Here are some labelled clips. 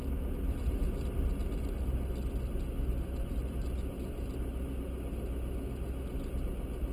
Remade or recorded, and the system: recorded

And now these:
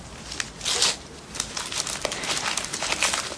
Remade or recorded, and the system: recorded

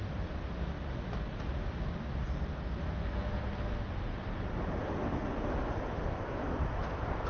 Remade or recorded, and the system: recorded